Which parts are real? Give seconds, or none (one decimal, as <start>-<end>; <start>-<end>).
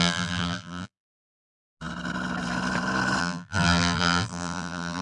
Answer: 1.1-3.2